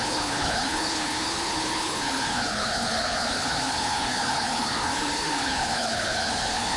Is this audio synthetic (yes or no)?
yes